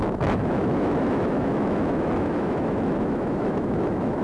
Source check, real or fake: fake